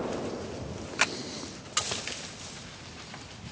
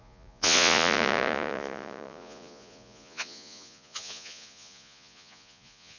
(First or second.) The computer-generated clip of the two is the second